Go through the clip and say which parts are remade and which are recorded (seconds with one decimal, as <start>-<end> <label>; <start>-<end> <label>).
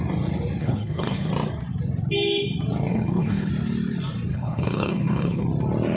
0.0-0.6 recorded; 0.6-1.3 remade; 1.3-2.9 recorded; 2.9-3.5 remade; 3.5-4.3 recorded; 4.3-5.4 remade; 5.4-6.0 recorded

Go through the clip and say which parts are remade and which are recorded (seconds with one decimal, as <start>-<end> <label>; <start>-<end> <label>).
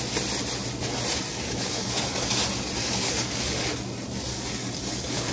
0.0-1.3 recorded; 1.3-2.4 remade; 2.4-2.8 recorded; 2.8-3.7 remade; 3.7-4.3 recorded; 4.3-5.3 remade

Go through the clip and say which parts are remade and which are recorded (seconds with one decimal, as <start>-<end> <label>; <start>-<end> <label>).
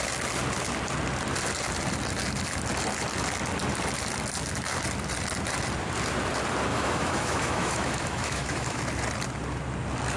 0.0-6.7 recorded; 6.7-8.8 remade; 8.8-10.2 recorded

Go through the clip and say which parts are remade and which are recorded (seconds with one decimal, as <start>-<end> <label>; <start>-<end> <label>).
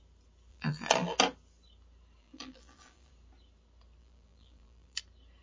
0.0-0.5 recorded; 0.5-1.2 remade; 1.2-2.2 recorded; 2.2-3.1 remade; 3.1-4.0 recorded; 4.0-5.0 remade; 5.0-5.4 recorded